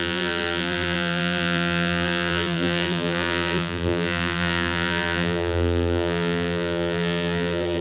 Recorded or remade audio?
remade